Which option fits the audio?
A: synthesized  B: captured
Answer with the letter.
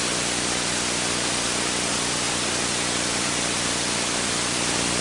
B